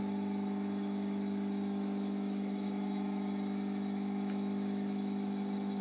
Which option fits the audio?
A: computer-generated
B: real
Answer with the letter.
A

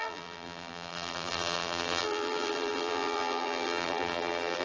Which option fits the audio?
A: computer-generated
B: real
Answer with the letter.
A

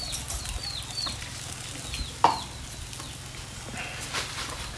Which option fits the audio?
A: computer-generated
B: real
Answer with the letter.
B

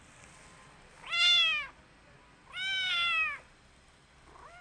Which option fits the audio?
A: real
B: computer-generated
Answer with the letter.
A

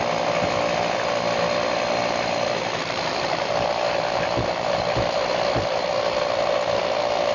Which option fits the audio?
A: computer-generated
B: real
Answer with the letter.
B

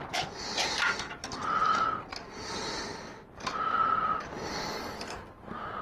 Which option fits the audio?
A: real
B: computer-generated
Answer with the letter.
A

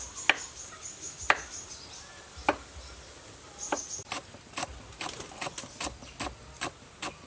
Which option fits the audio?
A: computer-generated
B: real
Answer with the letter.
B